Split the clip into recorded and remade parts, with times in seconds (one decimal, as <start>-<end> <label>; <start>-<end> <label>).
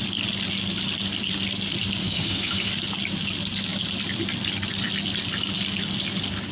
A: 0.0-2.0 recorded; 2.0-2.7 remade; 2.7-6.5 recorded